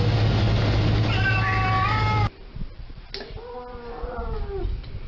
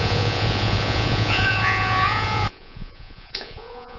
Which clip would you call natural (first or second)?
first